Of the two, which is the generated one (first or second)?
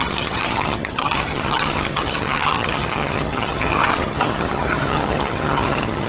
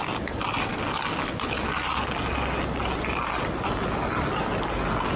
first